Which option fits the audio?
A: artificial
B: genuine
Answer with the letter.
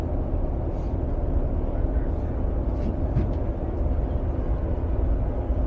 B